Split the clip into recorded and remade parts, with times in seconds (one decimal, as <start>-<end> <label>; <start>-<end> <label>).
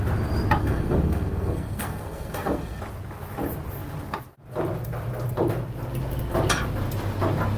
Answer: 0.0-0.6 recorded; 0.6-2.8 remade; 2.8-7.6 recorded